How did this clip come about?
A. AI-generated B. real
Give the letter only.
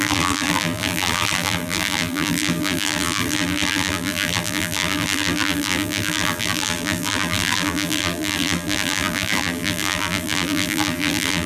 A